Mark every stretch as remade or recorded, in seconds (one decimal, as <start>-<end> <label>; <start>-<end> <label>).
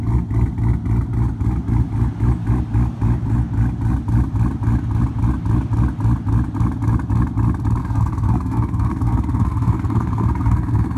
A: 0.0-7.8 recorded; 7.8-11.0 remade